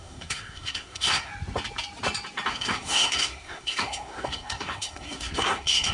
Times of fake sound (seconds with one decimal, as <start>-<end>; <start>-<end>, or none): 0.0-1.3; 2.5-5.9